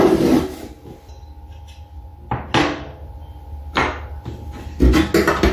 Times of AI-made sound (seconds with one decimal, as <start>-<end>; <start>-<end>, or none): none